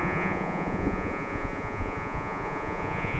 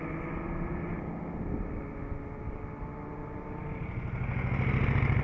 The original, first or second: second